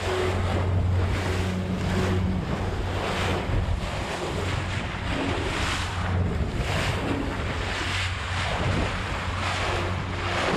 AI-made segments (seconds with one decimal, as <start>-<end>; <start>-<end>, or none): 3.3-5.9; 8.5-9.2